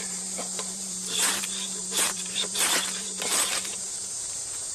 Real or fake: fake